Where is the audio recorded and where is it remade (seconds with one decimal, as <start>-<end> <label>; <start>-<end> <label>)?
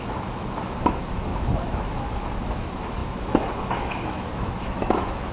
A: 0.0-5.3 remade